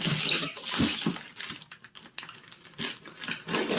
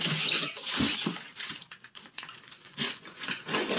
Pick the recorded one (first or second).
first